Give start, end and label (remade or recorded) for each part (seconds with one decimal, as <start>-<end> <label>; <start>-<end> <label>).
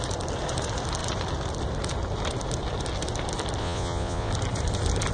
0.0-3.6 recorded; 3.6-4.3 remade; 4.3-5.1 recorded